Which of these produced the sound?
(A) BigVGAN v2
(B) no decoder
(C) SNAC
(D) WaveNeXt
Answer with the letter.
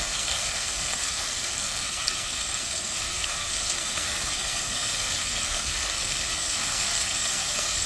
C